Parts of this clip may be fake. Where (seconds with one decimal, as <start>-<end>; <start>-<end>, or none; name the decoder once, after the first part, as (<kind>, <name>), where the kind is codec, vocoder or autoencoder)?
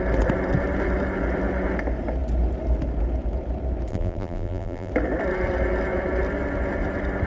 3.9-4.9 (vocoder, BigVGAN v2)